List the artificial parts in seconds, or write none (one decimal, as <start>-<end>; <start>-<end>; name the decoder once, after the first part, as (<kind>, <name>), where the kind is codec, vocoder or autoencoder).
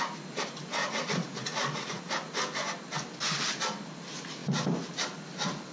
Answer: 0.8-2.0 (vocoder, Vocos)